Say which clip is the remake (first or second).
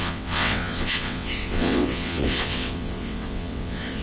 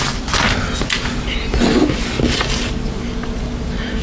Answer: first